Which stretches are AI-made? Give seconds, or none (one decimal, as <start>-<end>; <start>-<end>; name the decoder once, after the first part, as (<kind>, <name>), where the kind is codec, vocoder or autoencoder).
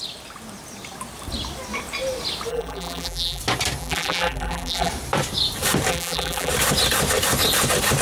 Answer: 2.5-3.4 (vocoder, BigVGAN v2); 3.8-4.9; 5.9-6.5